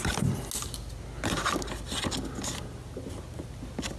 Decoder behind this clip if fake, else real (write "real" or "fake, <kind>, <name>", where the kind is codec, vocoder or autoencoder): real